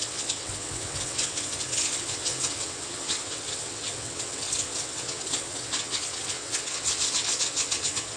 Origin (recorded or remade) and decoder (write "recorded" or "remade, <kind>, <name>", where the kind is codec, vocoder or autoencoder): remade, vocoder, WaveNeXt